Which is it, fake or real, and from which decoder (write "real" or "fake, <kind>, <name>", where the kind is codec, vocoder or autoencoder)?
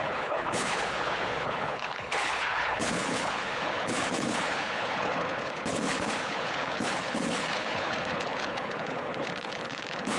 fake, codec, HILCodec